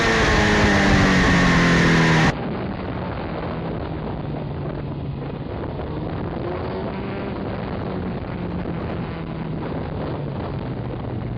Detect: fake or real real